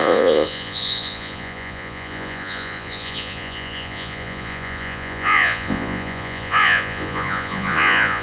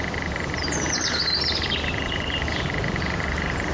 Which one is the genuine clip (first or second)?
second